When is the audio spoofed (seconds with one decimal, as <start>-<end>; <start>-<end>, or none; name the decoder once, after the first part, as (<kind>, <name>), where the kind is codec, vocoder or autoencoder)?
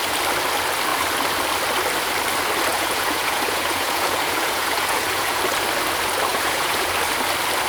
2.7-5.4 (vocoder, Vocos); 6.3-6.9